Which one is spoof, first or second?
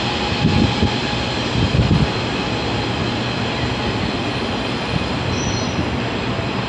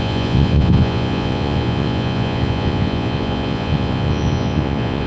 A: second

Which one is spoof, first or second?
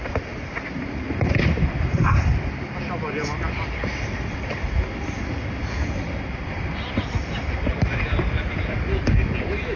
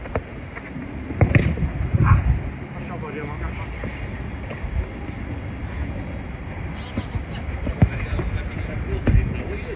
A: first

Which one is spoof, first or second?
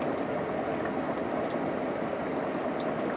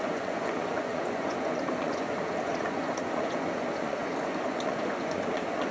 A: second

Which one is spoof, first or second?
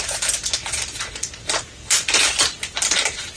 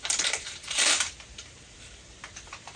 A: second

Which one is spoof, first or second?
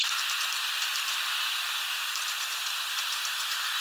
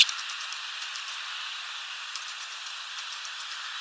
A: first